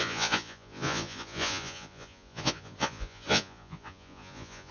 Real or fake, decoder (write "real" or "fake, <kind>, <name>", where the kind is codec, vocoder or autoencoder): fake, vocoder, Vocos